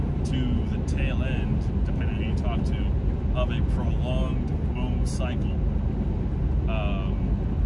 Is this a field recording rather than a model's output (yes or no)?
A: yes